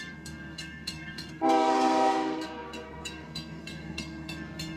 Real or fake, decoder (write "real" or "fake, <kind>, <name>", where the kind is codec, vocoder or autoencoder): fake, codec, SNAC